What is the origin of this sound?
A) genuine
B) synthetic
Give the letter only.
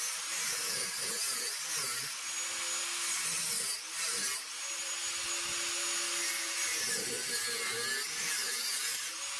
A